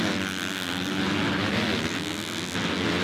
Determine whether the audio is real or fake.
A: real